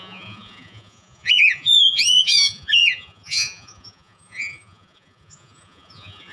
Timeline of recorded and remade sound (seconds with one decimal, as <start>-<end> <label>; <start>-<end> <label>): 0.0-6.3 remade